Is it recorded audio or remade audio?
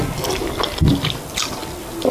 recorded